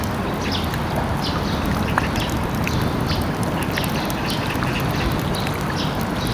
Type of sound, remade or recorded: recorded